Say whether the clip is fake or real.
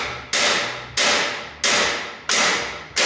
real